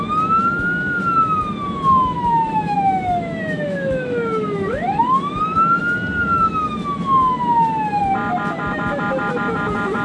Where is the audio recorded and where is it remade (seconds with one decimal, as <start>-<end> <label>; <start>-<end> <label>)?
0.0-1.9 recorded; 1.9-5.8 remade; 5.8-10.0 recorded